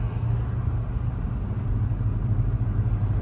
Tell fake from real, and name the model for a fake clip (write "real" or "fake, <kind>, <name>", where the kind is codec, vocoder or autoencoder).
real